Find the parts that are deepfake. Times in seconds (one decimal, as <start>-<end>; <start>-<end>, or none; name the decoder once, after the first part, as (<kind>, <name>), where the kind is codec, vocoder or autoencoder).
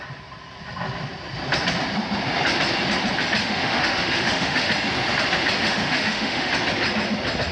3.4-4.7 (autoencoder, DAC-VAE); 5.6-6.5